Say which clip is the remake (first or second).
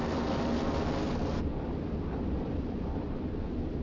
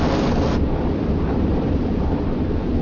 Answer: second